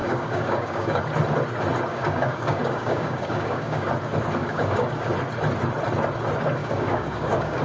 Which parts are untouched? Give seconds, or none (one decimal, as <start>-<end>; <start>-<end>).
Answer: 1.0-1.9; 3.9-4.4; 5.1-6.6